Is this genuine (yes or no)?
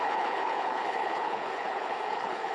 no